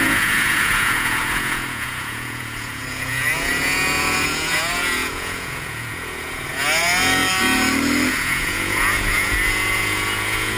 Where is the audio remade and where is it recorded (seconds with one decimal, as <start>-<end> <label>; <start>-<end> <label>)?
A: 0.0-7.2 remade; 7.2-8.1 recorded; 8.1-10.6 remade